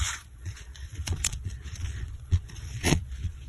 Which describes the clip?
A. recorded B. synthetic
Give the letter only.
B